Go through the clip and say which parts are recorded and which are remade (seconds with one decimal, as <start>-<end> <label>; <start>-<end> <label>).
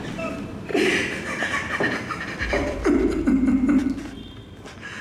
0.0-0.7 recorded; 0.7-3.2 remade; 3.2-5.0 recorded